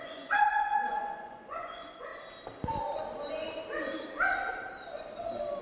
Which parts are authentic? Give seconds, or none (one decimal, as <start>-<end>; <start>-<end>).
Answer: 2.1-5.6